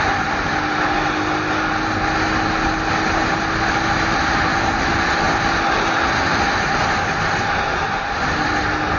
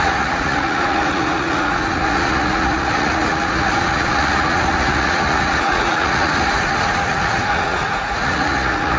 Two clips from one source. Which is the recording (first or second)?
first